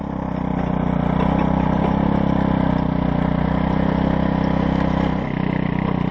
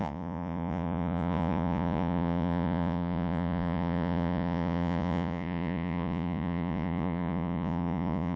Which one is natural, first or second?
first